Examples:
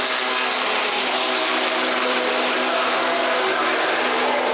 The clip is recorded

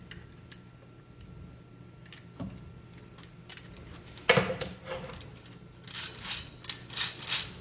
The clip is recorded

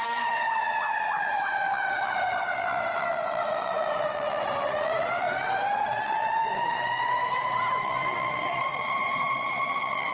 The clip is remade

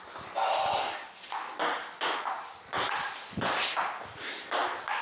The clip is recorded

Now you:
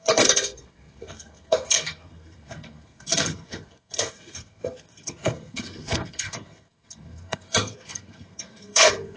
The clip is remade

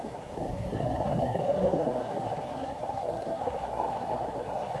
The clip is remade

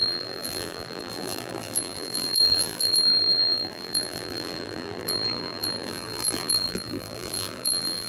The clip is remade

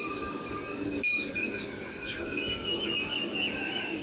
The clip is remade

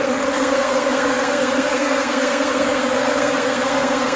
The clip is remade